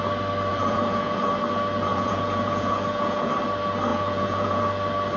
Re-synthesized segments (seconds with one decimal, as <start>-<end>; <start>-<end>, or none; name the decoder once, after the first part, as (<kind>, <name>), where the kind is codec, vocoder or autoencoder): 0.5-1.3 (vocoder, Vocos); 1.9-3.3; 3.9-4.6